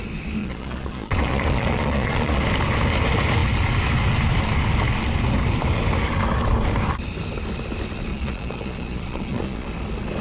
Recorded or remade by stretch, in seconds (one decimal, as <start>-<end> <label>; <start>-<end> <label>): 0.0-0.4 recorded; 0.4-2.4 remade; 2.4-8.1 recorded; 8.1-9.7 remade; 9.7-10.2 recorded